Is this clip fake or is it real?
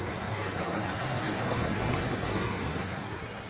fake